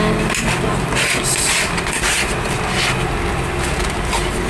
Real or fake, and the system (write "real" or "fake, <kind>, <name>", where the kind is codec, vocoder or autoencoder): real